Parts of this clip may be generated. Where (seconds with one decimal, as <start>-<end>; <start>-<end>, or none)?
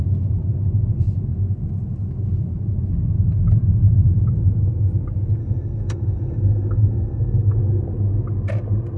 5.4-7.6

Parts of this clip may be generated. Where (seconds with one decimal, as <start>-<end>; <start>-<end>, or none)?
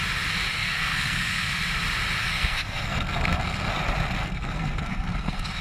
0.6-1.6; 2.2-3.7; 4.2-5.6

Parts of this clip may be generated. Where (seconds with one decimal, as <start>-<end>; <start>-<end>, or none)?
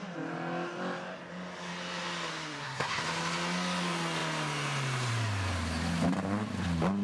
2.3-3.0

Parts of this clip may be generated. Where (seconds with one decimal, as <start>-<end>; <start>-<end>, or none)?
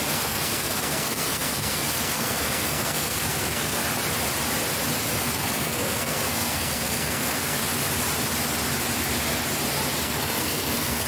0.0-3.8; 5.2-7.6; 10.0-11.1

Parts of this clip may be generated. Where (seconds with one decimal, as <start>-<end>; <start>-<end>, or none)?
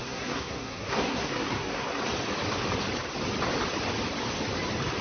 0.0-2.0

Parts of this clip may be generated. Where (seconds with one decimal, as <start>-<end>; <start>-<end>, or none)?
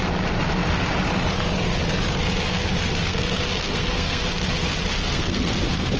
3.1-4.2; 5.0-5.5